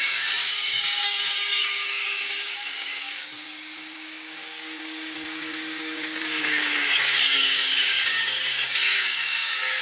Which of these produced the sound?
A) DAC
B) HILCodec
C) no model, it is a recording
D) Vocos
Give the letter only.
A